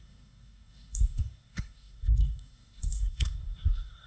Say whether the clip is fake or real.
fake